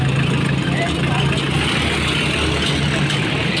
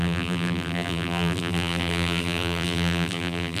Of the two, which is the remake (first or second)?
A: second